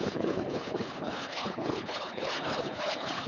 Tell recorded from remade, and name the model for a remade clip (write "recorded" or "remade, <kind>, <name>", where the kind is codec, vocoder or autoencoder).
remade, codec, HILCodec